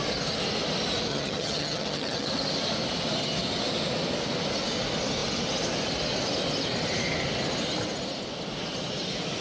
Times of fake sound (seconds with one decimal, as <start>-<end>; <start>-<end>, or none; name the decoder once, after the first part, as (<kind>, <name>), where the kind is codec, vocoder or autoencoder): 1.1-2.3 (vocoder, HiFi-GAN)